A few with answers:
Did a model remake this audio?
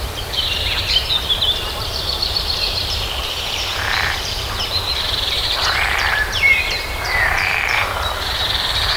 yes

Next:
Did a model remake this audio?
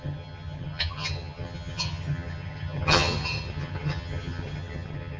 yes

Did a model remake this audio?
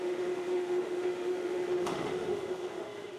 yes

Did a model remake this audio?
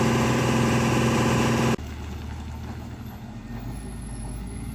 no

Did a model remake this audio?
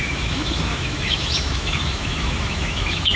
yes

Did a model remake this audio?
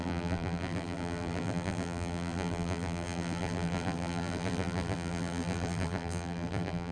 yes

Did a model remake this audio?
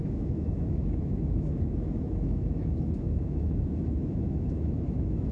yes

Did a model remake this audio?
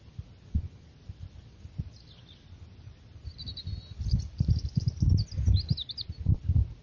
no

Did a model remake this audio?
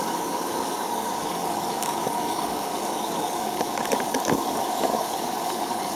yes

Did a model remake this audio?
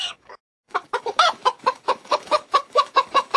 yes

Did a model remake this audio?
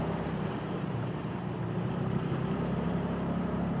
yes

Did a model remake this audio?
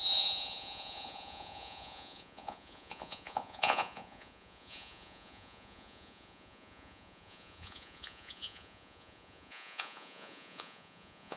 yes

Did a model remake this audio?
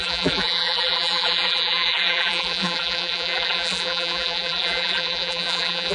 yes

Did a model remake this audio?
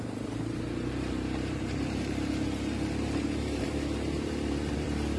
yes